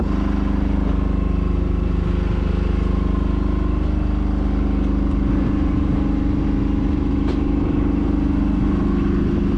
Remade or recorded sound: recorded